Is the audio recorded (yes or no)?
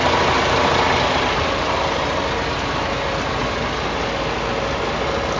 yes